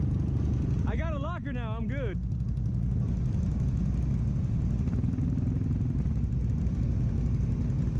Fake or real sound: real